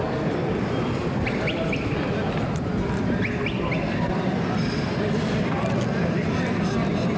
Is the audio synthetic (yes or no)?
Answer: no